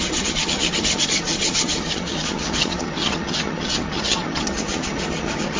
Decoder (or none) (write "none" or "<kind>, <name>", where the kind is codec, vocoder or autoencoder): vocoder, HiFi-GAN